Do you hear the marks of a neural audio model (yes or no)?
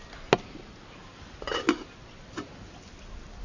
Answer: no